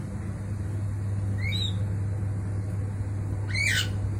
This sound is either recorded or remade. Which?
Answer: recorded